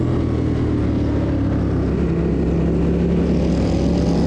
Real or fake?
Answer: real